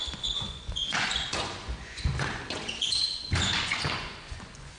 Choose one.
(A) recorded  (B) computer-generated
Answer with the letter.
B